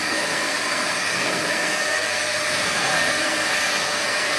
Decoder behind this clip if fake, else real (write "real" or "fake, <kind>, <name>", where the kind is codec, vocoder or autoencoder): fake, codec, SNAC